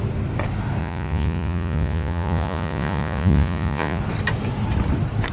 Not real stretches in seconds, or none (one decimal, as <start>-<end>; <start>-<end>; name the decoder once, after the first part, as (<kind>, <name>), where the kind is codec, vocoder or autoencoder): 0.8-4.0 (vocoder, Vocos)